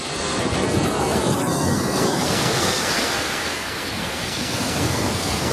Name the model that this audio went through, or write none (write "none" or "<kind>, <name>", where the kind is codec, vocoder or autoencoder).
codec, SNAC